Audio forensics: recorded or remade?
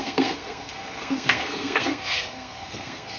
remade